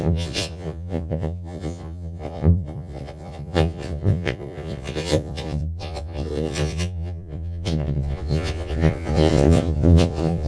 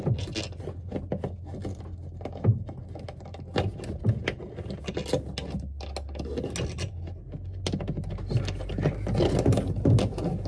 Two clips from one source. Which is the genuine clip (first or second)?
second